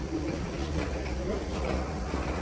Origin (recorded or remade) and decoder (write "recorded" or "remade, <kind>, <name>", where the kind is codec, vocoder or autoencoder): remade, vocoder, Vocos